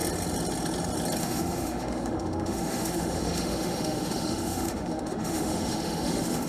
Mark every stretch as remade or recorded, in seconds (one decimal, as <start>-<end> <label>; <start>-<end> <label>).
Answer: 0.0-1.2 recorded; 1.2-6.5 remade